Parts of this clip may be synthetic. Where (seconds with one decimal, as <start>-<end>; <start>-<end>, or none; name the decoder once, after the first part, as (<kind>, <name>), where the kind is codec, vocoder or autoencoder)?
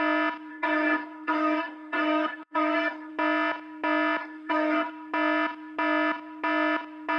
0.5-3.1 (codec, DAC); 4.2-4.9